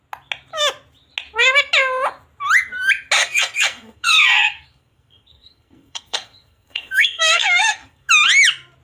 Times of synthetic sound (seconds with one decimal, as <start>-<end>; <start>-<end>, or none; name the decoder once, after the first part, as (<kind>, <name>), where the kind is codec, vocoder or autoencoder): 3.2-8.1 (codec, SNAC)